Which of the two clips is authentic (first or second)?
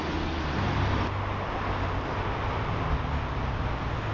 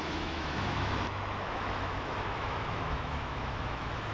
first